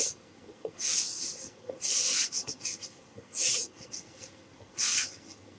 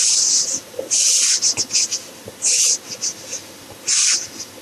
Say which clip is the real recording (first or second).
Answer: second